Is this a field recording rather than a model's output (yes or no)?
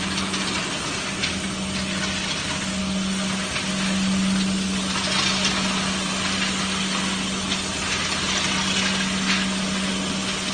yes